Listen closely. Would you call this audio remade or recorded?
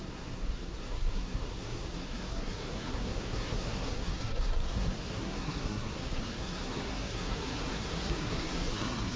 remade